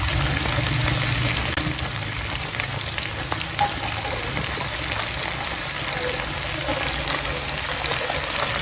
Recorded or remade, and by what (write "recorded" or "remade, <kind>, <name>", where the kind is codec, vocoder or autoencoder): recorded